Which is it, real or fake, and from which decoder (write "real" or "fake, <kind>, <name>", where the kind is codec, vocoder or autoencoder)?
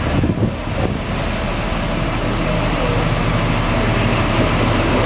real